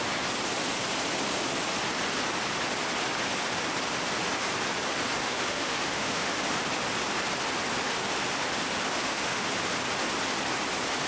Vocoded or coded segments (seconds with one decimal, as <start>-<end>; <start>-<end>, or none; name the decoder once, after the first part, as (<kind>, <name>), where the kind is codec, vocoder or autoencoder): 5.2-6.4 (autoencoder, DAC-VAE); 8.9-9.5